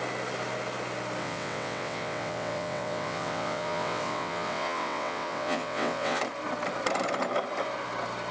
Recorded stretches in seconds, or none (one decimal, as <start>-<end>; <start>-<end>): 0.0-1.2; 6.2-8.3